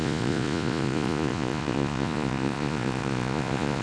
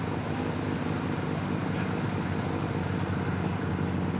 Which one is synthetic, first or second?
first